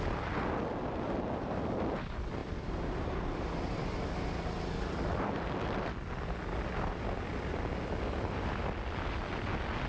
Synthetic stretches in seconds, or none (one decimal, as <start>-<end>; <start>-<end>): none